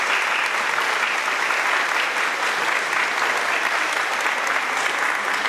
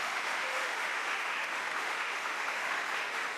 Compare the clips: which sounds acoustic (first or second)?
first